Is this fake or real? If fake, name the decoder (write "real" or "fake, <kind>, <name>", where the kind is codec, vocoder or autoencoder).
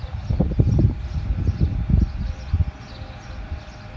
real